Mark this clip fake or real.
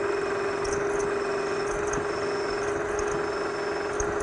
real